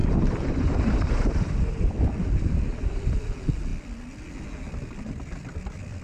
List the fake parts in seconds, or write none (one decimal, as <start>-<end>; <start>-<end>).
0.0-3.7; 4.6-6.0